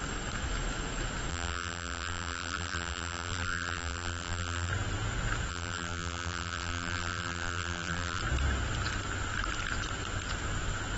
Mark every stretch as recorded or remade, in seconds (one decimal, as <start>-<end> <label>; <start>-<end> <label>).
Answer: 0.0-1.3 recorded; 1.3-4.7 remade; 4.7-5.5 recorded; 5.5-8.2 remade; 8.2-11.0 recorded

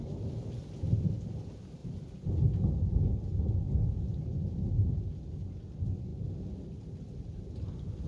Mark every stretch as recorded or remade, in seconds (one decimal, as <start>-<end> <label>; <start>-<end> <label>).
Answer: 0.0-1.8 recorded; 1.8-2.7 remade; 2.7-8.1 recorded

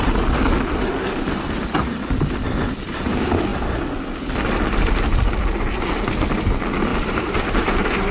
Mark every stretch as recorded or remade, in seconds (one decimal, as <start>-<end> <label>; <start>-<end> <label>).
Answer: 0.0-6.9 recorded; 6.9-8.1 remade

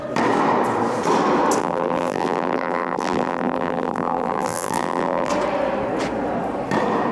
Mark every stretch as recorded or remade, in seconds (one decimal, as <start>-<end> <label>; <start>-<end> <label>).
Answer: 0.0-1.6 recorded; 1.6-5.3 remade; 5.3-7.1 recorded

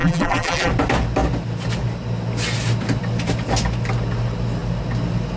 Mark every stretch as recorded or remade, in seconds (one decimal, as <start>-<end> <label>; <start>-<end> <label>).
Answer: 0.0-0.7 remade; 0.7-5.4 recorded

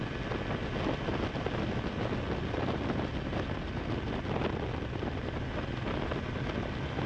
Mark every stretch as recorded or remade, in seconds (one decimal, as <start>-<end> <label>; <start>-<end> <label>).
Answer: 0.0-7.1 recorded